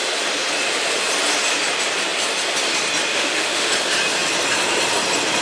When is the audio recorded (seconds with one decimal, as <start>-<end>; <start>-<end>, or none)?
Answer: 0.0-3.1; 3.7-5.4